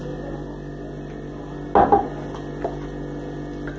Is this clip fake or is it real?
real